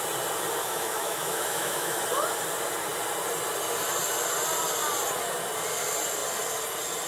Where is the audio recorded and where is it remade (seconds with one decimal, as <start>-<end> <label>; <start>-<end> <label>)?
0.0-0.6 recorded; 0.6-2.0 remade; 2.0-7.1 recorded